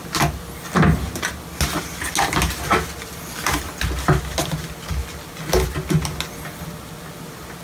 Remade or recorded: recorded